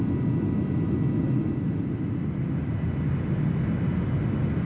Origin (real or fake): real